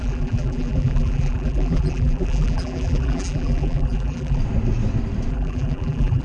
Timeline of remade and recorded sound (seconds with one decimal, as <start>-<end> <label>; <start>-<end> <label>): 0.0-4.4 remade; 4.4-5.3 recorded; 5.3-6.2 remade